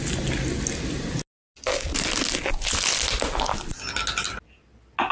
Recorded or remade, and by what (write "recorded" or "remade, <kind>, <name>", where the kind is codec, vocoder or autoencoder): recorded